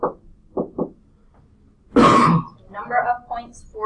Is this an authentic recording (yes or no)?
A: yes